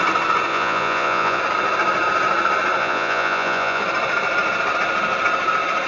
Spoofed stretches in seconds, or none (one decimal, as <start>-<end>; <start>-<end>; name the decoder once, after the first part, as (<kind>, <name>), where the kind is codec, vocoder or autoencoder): 0.5-1.4 (vocoder, Vocos); 2.8-3.8